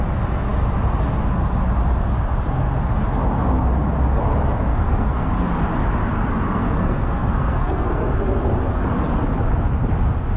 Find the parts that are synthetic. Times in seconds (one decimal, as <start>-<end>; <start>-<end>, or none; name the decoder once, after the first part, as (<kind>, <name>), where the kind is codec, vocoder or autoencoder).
4.7-5.3 (codec, SNAC); 6.5-8.2